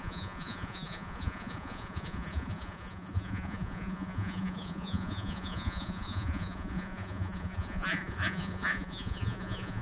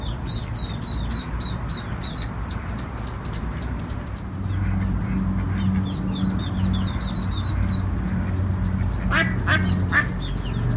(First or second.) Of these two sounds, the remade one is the first